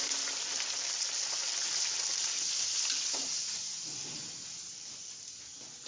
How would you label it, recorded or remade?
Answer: recorded